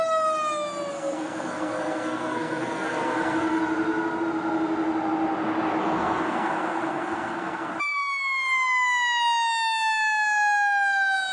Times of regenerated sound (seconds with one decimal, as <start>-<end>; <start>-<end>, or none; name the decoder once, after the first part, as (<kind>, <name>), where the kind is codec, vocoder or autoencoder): 0.9-3.6 (codec, SNAC); 5.8-7.7